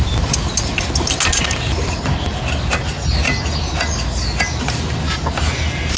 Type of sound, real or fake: real